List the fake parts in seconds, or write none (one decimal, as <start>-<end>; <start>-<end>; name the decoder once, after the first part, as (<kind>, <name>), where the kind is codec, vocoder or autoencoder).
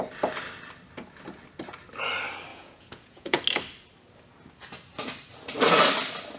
2.5-3.4 (vocoder, Vocos)